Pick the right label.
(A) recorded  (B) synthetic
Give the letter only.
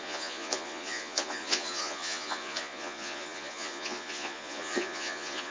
B